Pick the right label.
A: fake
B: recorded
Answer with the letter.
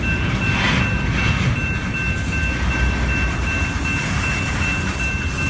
B